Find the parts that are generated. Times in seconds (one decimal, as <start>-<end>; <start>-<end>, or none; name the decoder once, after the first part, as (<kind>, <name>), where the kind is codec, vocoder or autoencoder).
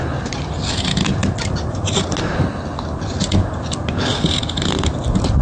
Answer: none